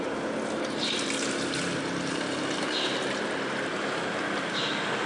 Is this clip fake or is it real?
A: real